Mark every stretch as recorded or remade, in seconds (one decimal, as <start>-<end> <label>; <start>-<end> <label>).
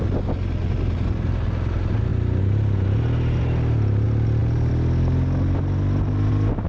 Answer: 0.0-6.7 recorded